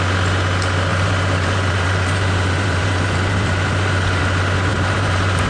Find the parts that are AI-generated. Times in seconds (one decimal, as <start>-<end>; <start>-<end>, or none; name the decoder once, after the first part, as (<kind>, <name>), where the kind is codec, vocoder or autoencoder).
0.9-4.2 (vocoder, BigVGAN v2); 4.7-5.5